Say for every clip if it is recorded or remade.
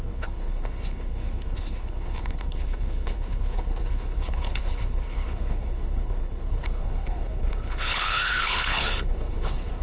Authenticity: remade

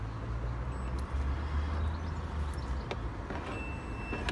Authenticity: recorded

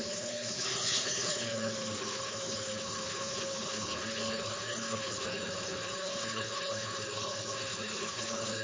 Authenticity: remade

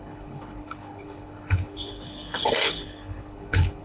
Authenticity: remade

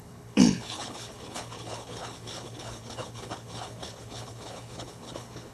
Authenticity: remade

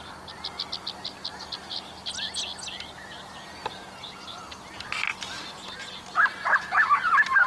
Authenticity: recorded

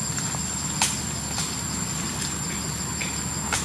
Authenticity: recorded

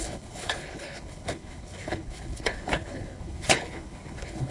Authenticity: remade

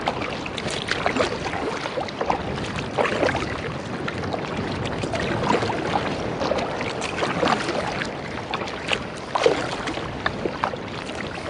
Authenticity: recorded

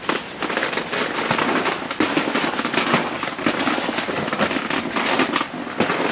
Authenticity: recorded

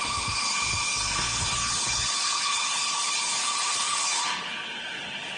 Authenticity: remade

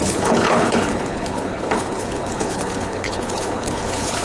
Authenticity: remade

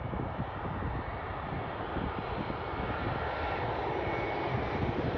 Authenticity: recorded